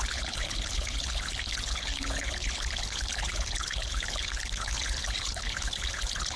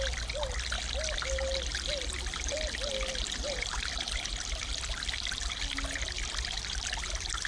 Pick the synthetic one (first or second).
first